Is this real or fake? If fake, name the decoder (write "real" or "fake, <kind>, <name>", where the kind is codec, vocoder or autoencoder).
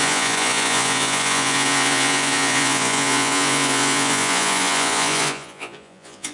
fake, vocoder, Vocos